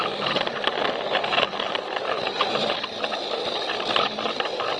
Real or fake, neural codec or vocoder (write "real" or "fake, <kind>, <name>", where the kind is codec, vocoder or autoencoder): real